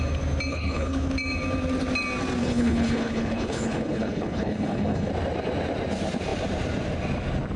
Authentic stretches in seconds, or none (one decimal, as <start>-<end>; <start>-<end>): 0.0-0.5; 1.1-2.4; 5.1-7.6